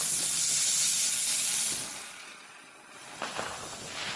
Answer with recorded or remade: recorded